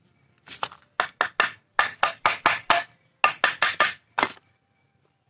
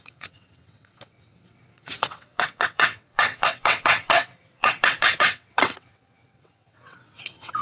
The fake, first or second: second